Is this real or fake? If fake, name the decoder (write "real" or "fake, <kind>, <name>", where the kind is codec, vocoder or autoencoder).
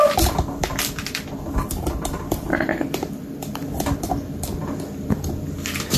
fake, vocoder, BigVGAN v2